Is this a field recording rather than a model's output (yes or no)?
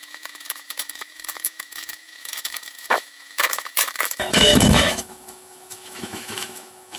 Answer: no